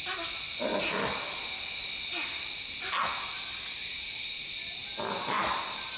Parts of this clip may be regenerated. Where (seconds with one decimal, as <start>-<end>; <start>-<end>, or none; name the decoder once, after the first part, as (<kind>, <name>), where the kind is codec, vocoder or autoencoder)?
none